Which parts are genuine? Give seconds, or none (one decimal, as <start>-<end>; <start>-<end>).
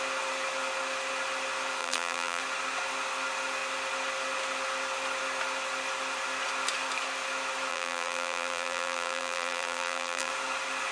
0.0-1.8; 2.4-7.7; 10.3-10.9